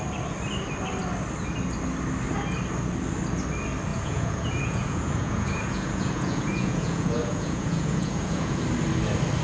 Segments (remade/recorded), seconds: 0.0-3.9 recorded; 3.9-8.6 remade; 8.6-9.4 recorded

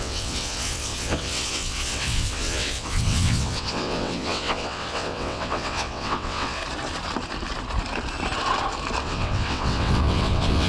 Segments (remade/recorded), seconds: 0.0-6.6 remade; 6.6-9.0 recorded; 9.0-10.7 remade

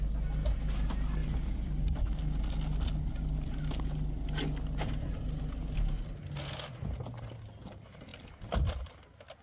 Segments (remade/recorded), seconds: 0.0-1.2 recorded; 1.2-1.8 remade; 1.8-8.1 recorded; 8.1-8.9 remade; 8.9-9.4 recorded

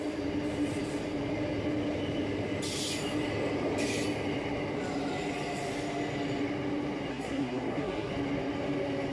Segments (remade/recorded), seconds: 0.0-7.1 recorded; 7.1-8.1 remade; 8.1-9.1 recorded

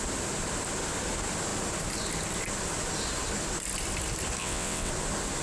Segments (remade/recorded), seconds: 0.0-4.4 recorded; 4.4-4.9 remade; 4.9-5.4 recorded

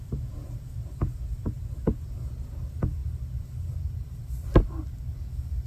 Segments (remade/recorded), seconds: 0.0-5.7 recorded

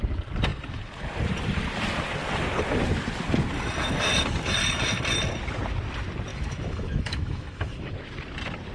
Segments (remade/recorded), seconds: 0.0-6.3 recorded; 6.3-7.9 remade; 7.9-8.7 recorded

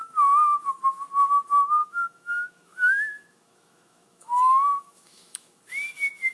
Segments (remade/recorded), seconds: 0.0-1.8 recorded; 1.8-5.6 remade; 5.6-6.3 recorded